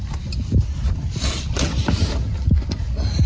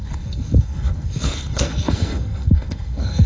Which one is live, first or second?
first